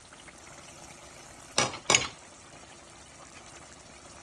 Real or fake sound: real